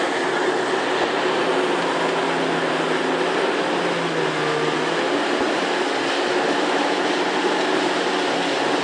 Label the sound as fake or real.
real